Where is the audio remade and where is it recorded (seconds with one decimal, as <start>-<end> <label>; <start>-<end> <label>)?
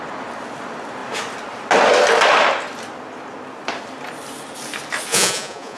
0.0-5.1 recorded; 5.1-5.8 remade